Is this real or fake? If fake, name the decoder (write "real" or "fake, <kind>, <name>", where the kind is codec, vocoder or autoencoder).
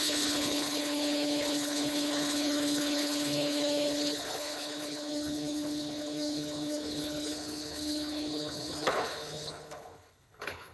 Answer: fake, codec, HILCodec